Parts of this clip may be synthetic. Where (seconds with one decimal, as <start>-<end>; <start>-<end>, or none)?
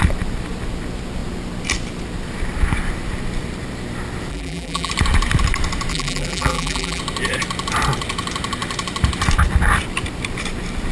4.3-4.9; 5.9-7.0